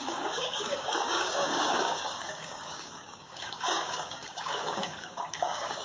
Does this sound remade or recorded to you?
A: remade